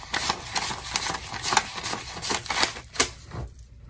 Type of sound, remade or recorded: recorded